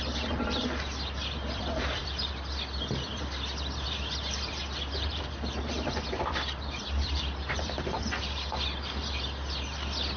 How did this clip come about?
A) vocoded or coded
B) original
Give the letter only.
A